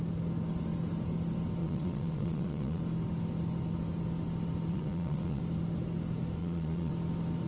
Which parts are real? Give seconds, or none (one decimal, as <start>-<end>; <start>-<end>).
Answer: 0.0-1.6; 2.8-4.7; 5.4-6.4; 6.9-7.5